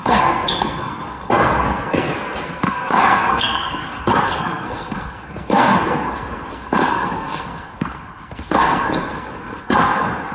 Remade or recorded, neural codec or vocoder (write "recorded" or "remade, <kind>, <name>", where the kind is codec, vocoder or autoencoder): remade, codec, SNAC